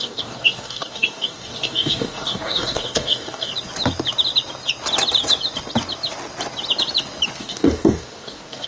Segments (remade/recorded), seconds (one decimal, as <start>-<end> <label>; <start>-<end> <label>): 0.0-3.5 remade; 3.5-7.4 recorded; 7.4-8.7 remade